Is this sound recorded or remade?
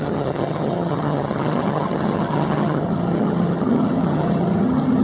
remade